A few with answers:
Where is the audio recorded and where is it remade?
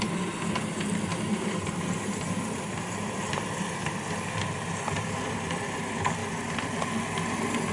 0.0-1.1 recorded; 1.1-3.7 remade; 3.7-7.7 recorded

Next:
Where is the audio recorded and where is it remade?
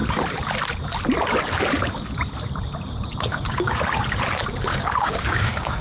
0.0-3.3 recorded; 3.3-3.8 remade; 3.8-4.7 recorded; 4.7-5.8 remade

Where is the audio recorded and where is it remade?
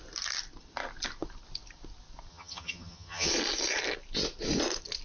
0.0-2.3 recorded; 2.3-3.3 remade; 3.3-5.0 recorded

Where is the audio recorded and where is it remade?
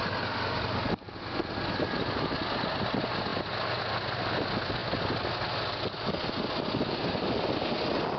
0.0-8.2 recorded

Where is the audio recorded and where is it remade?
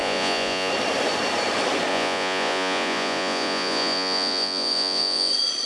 0.0-0.7 remade; 0.7-1.9 recorded; 1.9-5.3 remade; 5.3-5.7 recorded